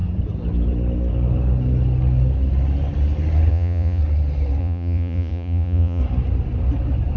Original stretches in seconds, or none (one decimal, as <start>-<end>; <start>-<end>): 0.0-3.5; 4.0-4.6; 6.0-7.2